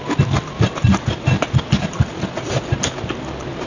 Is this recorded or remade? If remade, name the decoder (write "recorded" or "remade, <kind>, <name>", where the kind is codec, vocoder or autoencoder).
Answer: recorded